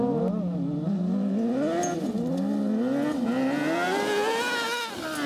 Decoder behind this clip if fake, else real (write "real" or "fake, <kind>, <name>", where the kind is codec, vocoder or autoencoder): real